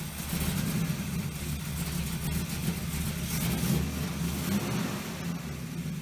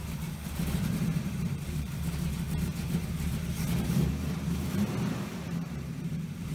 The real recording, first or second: first